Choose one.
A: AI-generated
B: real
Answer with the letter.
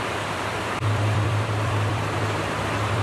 A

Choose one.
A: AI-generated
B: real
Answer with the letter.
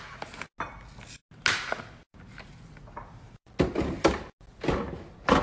B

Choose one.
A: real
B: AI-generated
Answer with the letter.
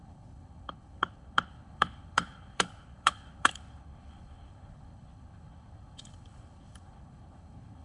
B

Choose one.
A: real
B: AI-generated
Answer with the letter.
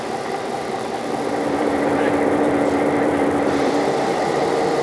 B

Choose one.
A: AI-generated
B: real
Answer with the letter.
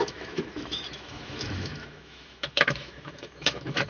A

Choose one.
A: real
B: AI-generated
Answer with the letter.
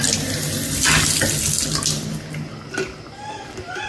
A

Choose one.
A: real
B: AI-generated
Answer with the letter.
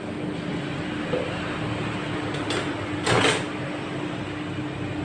A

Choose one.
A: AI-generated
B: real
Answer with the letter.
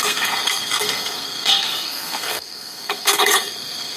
A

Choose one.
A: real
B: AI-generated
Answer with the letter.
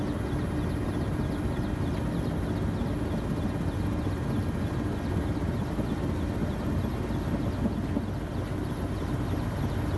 A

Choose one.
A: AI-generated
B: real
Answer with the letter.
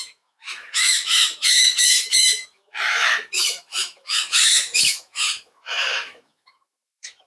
A